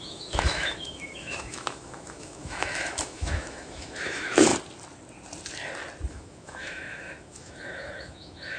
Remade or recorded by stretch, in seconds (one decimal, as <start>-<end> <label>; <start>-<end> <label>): 0.0-4.5 remade; 4.5-6.1 recorded; 6.1-8.6 remade